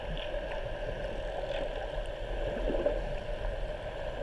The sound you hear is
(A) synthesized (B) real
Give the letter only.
B